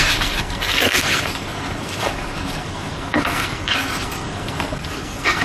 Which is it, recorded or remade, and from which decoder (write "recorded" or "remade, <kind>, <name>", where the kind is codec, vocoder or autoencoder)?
remade, codec, SNAC